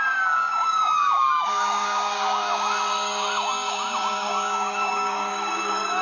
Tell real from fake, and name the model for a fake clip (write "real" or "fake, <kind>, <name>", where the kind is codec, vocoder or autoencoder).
fake, codec, DAC